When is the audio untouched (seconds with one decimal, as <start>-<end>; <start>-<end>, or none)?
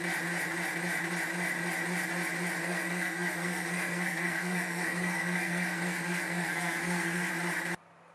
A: 0.0-2.6; 7.3-8.1